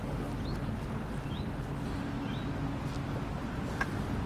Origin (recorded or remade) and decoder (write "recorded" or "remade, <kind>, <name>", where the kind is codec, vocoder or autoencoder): recorded